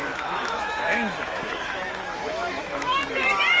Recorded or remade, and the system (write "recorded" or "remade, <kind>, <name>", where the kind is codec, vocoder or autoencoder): remade, autoencoder, DAC-VAE